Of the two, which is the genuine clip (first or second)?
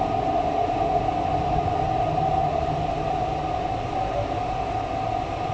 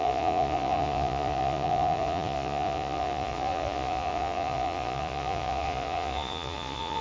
first